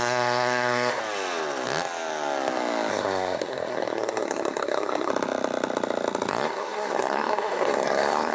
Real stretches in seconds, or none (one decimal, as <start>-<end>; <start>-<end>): 1.0-2.9; 5.1-6.3